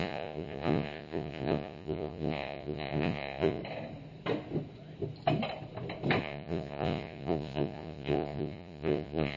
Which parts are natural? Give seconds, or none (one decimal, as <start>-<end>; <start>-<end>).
3.6-6.2